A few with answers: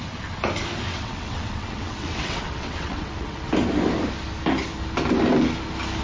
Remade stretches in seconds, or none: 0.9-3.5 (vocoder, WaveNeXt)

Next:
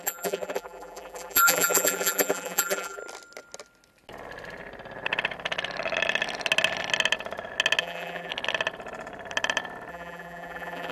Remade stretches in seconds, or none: 0.0-3.0 (vocoder, BigVGAN v2); 7.8-8.3; 9.9-10.9

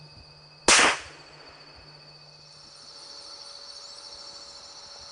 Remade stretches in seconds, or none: none

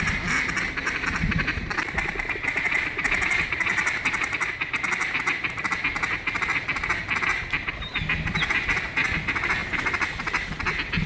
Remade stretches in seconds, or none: 1.3-5.7 (vocoder, BigVGAN v2); 9.6-10.5

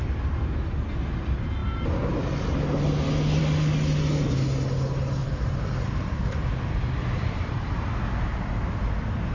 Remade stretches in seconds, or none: 5.2-7.7 (vocoder, BigVGAN v2)